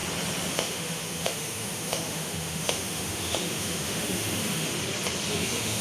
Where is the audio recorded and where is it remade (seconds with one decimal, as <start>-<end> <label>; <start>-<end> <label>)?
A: 0.0-0.5 recorded; 0.5-4.7 remade; 4.7-5.3 recorded; 5.3-5.8 remade